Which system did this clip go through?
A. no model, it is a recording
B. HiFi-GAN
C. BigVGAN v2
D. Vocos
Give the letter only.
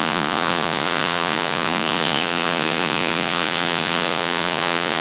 D